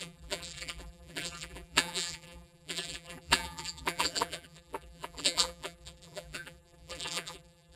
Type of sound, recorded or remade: remade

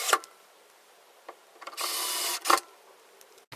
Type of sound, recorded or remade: recorded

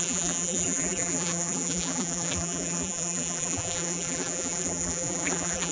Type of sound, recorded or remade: remade